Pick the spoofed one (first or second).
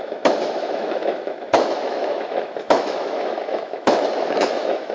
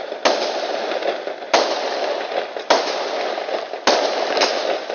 first